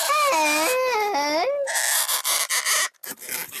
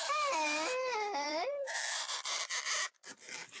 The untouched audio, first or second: first